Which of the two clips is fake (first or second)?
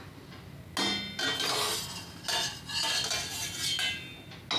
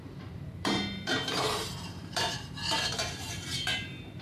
second